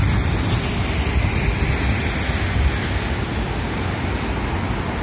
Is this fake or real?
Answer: real